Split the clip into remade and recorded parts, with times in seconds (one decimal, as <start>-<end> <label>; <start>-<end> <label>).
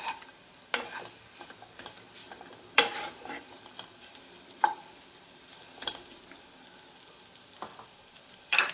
0.0-2.2 recorded; 2.2-6.2 remade; 6.2-7.7 recorded; 7.7-8.7 remade